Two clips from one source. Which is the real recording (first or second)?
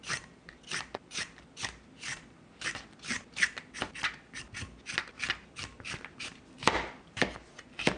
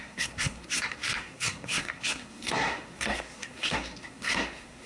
first